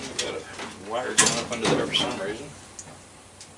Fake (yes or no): no